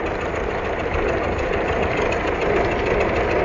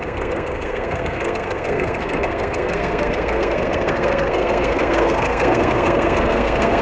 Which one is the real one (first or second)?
first